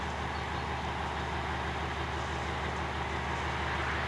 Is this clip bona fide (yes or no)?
yes